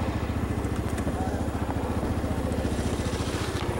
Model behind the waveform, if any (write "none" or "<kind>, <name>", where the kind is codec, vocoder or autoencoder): none